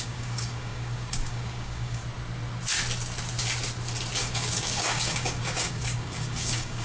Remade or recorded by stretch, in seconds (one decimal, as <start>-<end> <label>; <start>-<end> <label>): 0.0-2.0 remade; 2.0-4.2 recorded; 4.2-6.8 remade